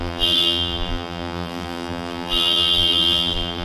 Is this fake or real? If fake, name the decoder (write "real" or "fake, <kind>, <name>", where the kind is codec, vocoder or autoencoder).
fake, vocoder, BigVGAN v2